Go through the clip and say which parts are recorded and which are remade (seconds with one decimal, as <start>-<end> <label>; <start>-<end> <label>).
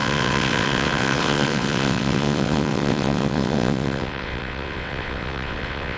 0.0-6.0 remade